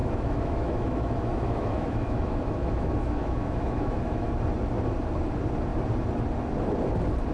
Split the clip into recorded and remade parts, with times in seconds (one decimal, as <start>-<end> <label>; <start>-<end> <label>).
0.0-4.3 remade; 4.3-7.3 recorded